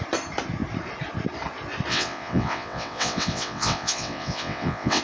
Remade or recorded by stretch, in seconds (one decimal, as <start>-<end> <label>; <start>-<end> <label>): 0.0-1.9 recorded; 1.9-5.0 remade